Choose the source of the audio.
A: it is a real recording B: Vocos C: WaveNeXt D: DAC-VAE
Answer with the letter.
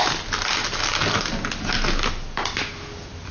A